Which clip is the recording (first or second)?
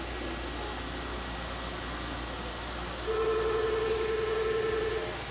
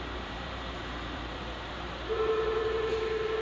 first